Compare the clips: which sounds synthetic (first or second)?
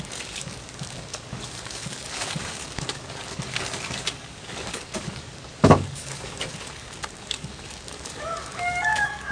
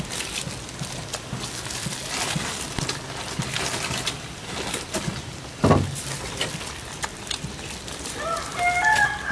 first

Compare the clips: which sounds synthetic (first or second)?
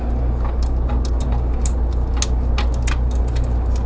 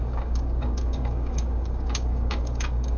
second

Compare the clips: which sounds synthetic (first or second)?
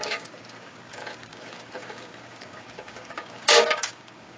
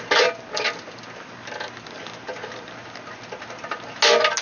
first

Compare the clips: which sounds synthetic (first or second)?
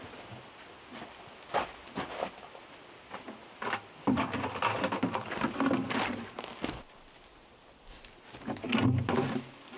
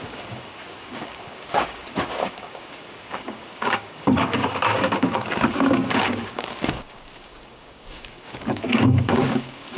second